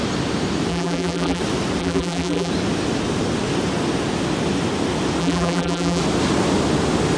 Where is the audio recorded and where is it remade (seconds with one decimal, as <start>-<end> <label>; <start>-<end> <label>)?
0.0-0.7 recorded; 0.7-1.4 remade; 1.4-1.8 recorded; 1.8-2.5 remade; 2.5-5.2 recorded; 5.2-6.0 remade; 6.0-7.2 recorded

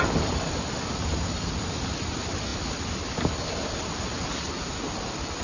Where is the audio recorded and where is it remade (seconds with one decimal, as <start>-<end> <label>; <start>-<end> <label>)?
0.0-5.4 recorded

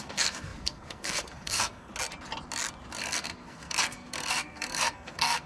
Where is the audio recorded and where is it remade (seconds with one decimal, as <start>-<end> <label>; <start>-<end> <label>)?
0.0-1.9 remade; 1.9-3.0 recorded; 3.0-5.5 remade